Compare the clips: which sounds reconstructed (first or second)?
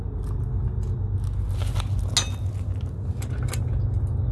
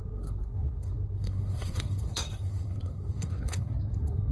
second